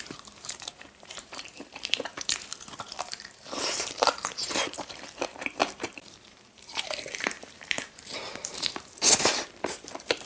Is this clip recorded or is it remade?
remade